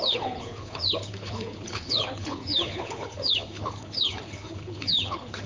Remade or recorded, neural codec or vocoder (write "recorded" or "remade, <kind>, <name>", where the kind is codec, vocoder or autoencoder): remade, codec, HILCodec